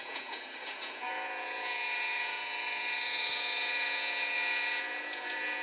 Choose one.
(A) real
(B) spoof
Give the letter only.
B